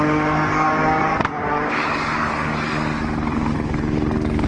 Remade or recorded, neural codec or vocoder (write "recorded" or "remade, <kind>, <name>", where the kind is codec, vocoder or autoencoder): remade, codec, DAC